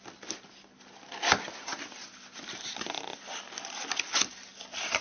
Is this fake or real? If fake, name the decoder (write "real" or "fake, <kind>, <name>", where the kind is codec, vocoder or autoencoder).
real